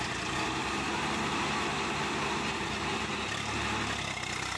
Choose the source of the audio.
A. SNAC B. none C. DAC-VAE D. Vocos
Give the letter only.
B